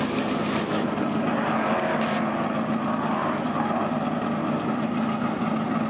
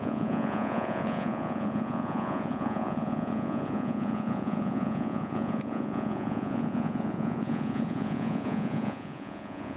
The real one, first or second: first